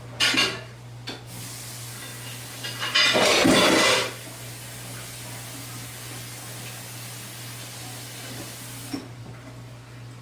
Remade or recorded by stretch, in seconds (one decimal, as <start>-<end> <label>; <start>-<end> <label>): 0.0-10.2 recorded